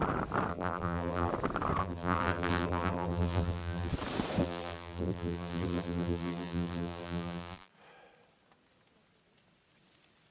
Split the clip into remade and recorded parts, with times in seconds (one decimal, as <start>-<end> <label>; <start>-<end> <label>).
0.0-0.5 recorded; 0.5-1.3 remade; 1.3-1.8 recorded; 1.8-3.9 remade; 3.9-4.4 recorded; 4.4-7.7 remade; 7.7-10.3 recorded